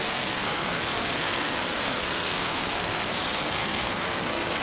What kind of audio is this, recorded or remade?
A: remade